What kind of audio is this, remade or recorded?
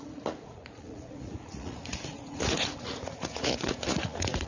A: remade